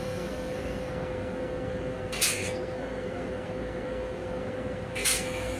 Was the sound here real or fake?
fake